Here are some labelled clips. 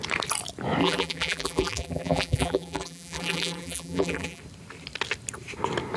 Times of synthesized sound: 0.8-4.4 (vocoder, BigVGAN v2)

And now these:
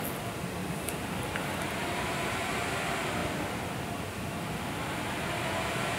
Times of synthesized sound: 0.6-2.5 (vocoder, BigVGAN v2)

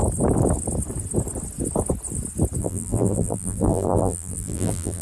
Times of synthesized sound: 2.6-5.0 (vocoder, BigVGAN v2)

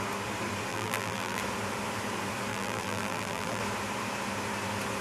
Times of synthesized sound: 0.7-1.4 (vocoder, BigVGAN v2); 2.5-3.6

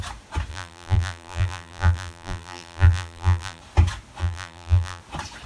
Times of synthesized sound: 0.5-3.6 (vocoder, BigVGAN v2); 4.2-5.0

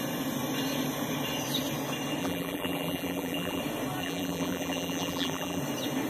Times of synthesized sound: 2.2-3.6 (vocoder, BigVGAN v2); 4.0-5.6